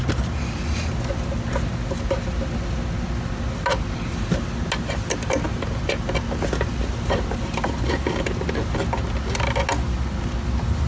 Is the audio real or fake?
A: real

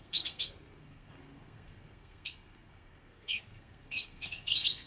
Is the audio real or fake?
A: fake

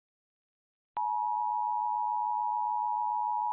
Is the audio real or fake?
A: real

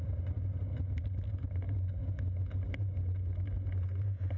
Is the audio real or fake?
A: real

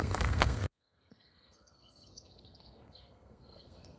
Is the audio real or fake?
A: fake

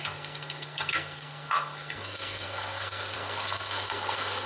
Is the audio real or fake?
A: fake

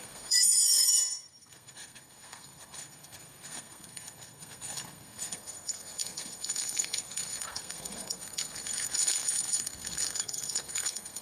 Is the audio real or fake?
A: fake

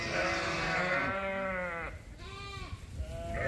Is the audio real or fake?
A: real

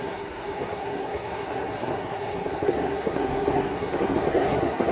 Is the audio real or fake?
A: fake